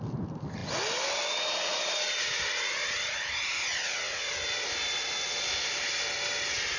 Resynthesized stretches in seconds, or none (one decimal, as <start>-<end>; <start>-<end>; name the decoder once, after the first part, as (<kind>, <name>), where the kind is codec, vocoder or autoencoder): 3.7-4.3 (vocoder, Vocos)